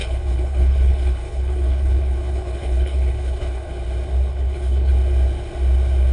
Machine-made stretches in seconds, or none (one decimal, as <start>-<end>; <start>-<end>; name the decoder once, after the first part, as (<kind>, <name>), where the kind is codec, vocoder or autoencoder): 0.0-3.7 (codec, HILCodec); 4.3-4.9